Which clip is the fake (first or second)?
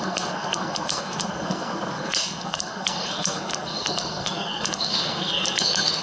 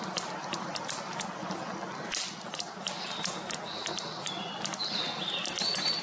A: first